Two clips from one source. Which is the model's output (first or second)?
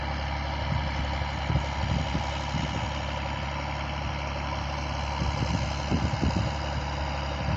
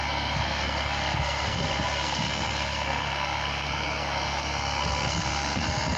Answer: second